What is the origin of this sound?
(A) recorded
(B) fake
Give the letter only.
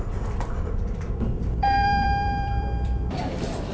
B